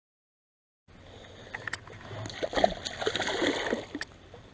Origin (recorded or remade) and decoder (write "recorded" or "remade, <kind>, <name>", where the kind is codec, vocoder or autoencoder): recorded